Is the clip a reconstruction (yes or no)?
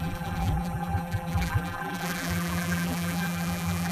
yes